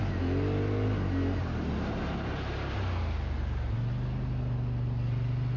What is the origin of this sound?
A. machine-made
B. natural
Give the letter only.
B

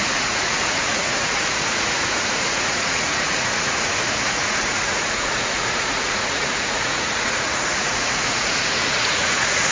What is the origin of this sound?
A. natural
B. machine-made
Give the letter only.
B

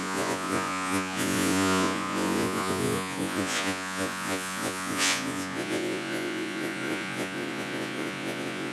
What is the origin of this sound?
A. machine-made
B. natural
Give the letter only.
A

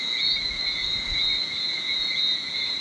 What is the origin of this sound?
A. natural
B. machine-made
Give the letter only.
B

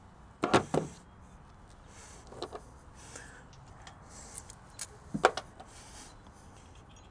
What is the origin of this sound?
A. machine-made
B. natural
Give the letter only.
B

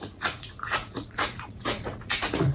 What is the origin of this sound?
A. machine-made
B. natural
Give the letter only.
A